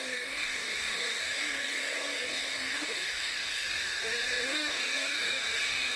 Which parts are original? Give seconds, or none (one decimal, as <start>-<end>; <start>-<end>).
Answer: none